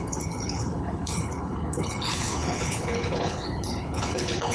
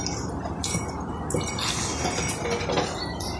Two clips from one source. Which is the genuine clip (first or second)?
second